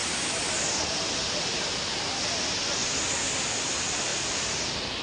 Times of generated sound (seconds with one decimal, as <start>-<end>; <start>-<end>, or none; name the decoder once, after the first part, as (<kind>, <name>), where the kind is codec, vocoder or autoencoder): 1.5-2.2 (vocoder, BigVGAN v2)